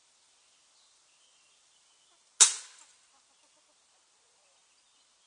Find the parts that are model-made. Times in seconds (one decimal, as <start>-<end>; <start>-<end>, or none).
none